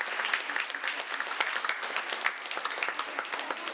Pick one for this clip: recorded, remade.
recorded